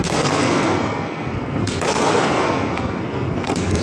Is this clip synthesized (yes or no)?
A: yes